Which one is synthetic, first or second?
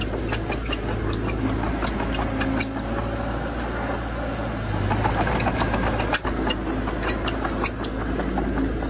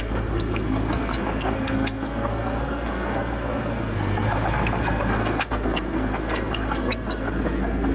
second